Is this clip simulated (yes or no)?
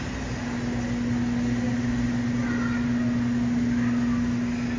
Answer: no